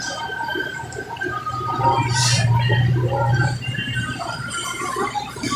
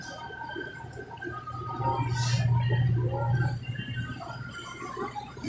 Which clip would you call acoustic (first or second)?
second